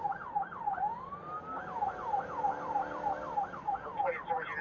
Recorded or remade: recorded